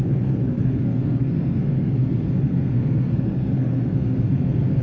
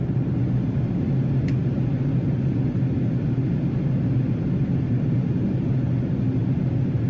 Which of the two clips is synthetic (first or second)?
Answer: first